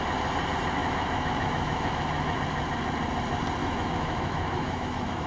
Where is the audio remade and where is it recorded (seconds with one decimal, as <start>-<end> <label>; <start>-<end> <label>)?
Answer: 0.0-0.8 recorded; 0.8-2.4 remade; 2.4-3.6 recorded; 3.6-5.3 remade